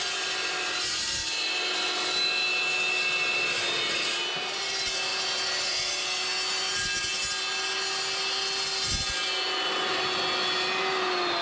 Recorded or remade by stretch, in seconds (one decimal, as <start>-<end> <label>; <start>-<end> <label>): 0.0-11.4 recorded

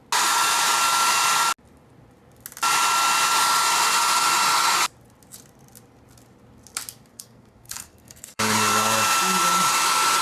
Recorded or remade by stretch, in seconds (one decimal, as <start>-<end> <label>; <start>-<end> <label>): 0.0-7.1 recorded; 7.1-8.4 remade; 8.4-10.2 recorded

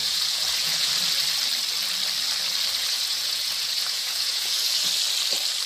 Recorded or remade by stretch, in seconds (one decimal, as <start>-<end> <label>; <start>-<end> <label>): 0.0-0.9 remade; 0.9-2.8 recorded; 2.8-4.9 remade; 4.9-5.7 recorded

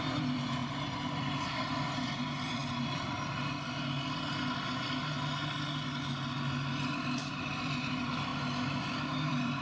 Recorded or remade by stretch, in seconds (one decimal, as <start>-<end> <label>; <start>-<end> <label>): 0.0-2.6 remade; 2.6-7.3 recorded; 7.3-8.3 remade; 8.3-8.9 recorded; 8.9-9.6 remade